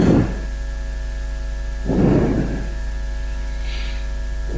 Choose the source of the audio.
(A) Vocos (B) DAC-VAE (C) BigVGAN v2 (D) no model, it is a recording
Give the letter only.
D